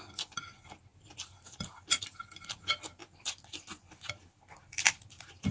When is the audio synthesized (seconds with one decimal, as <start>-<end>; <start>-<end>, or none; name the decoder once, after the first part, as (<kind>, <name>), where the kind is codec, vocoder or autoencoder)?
0.9-2.6 (vocoder, BigVGAN v2)